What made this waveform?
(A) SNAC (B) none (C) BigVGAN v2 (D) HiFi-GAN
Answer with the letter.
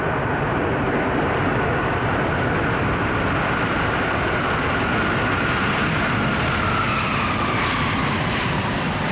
B